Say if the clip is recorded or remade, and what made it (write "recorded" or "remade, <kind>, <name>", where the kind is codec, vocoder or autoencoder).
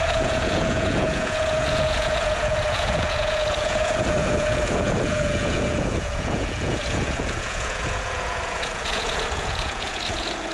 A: remade, vocoder, Vocos